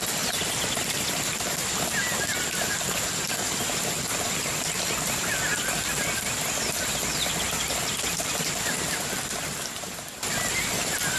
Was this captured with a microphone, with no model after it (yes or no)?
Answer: yes